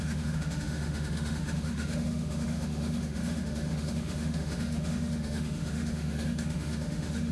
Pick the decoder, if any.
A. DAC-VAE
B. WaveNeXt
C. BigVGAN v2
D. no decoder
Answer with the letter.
A